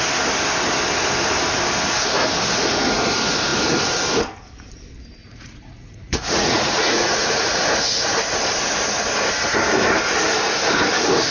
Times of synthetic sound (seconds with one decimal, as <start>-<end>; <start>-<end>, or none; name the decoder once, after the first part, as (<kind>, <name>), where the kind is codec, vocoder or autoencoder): 5.2-7.6 (vocoder, Vocos)